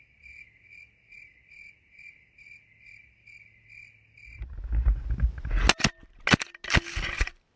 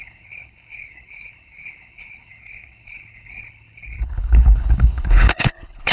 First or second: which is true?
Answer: first